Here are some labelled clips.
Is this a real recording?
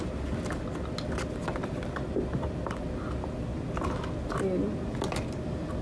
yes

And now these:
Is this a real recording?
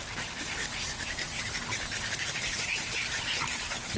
no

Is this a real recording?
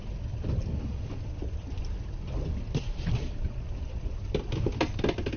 yes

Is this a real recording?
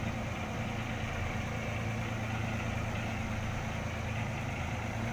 yes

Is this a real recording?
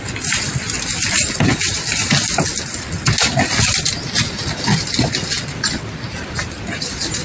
yes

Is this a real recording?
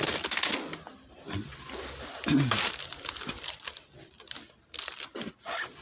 yes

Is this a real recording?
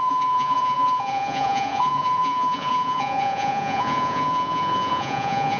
no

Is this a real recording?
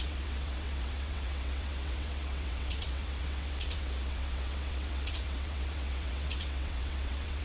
no